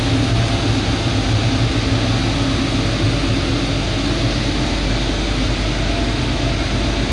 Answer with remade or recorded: recorded